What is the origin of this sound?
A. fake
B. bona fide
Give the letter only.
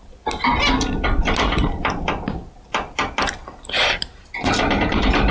B